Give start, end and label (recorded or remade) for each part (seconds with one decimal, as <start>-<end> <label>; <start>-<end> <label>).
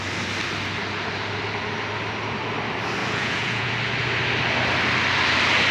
0.0-3.0 recorded; 3.0-3.7 remade; 3.7-5.7 recorded